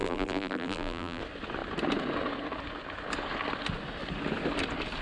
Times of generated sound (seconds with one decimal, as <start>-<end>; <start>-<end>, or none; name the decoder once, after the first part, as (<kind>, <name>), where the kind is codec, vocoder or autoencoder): 0.0-1.2 (vocoder, BigVGAN v2)